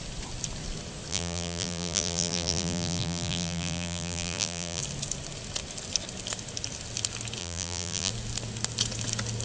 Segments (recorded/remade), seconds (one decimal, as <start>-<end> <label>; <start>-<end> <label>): 0.0-1.1 recorded; 1.1-4.8 remade; 4.8-7.4 recorded; 7.4-8.1 remade; 8.1-9.4 recorded